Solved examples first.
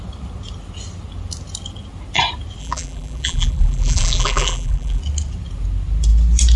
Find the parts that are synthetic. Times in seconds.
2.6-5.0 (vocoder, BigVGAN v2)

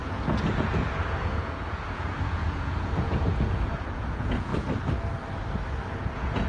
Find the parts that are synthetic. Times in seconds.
0.0-4.5 (vocoder, Vocos); 6.0-6.5

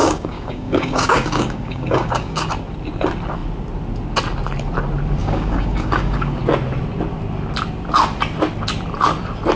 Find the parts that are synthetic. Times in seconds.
0.0-2.5 (codec, DAC); 5.2-6.4

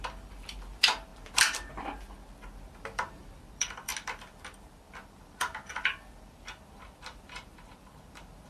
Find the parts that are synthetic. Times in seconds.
0.0-1.1 (vocoder, BigVGAN v2); 2.0-3.9; 4.7-8.5

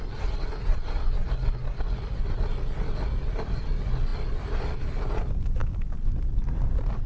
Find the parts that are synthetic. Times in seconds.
none